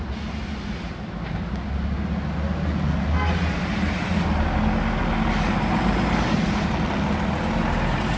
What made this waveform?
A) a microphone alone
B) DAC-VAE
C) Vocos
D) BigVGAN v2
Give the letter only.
A